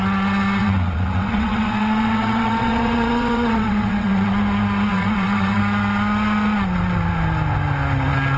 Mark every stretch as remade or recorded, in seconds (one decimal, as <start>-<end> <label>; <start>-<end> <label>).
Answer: 0.0-0.6 recorded; 0.6-4.3 remade; 4.3-4.9 recorded; 4.9-5.6 remade; 5.6-8.4 recorded